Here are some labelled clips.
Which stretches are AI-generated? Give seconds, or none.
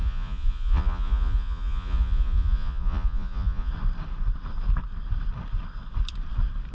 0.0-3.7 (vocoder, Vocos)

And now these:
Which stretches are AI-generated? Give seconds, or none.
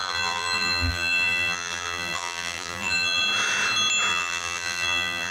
0.0-3.2 (vocoder, BigVGAN v2); 4.1-5.3